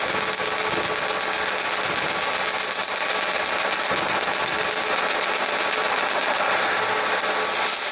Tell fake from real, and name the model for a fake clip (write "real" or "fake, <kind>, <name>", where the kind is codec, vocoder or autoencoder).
real